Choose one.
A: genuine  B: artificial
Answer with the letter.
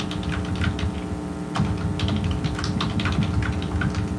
A